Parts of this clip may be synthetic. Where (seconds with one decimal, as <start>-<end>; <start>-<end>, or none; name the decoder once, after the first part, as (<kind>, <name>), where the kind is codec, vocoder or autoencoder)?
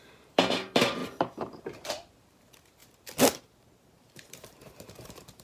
0.0-2.8 (vocoder, BigVGAN v2); 3.4-5.4